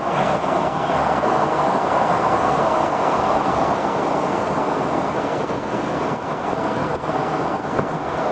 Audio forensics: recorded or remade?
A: remade